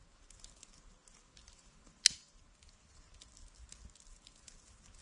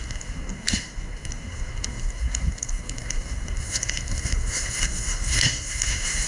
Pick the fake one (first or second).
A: second